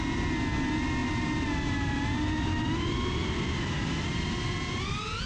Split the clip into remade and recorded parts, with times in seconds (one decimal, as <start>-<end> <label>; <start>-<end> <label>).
0.0-5.3 recorded